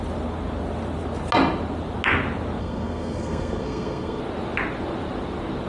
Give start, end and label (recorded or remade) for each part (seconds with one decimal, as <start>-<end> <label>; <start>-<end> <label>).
0.0-2.6 recorded; 2.6-4.2 remade; 4.2-5.7 recorded

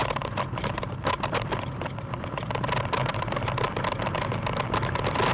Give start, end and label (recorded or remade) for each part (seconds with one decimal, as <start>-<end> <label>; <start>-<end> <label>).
0.0-1.8 remade; 1.8-5.3 recorded

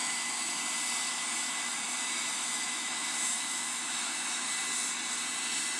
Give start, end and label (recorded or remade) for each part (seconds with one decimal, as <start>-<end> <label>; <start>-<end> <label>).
0.0-0.6 remade; 0.6-1.0 recorded; 1.0-4.5 remade; 4.5-5.8 recorded

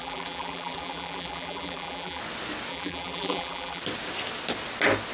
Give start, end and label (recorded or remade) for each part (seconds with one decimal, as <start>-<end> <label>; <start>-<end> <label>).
0.0-2.2 remade; 2.2-2.7 recorded; 2.7-3.8 remade; 3.8-5.1 recorded

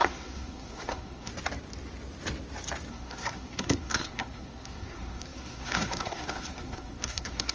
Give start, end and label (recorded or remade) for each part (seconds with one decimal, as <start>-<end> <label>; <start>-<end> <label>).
0.0-1.3 remade; 1.3-2.9 recorded; 2.9-7.5 remade